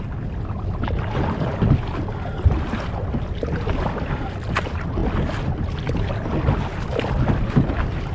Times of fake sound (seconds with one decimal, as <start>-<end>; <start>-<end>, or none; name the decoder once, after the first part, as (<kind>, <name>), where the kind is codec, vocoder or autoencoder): none